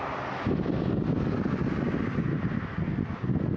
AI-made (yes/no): no